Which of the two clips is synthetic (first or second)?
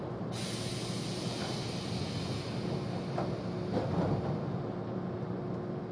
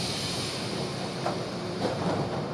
second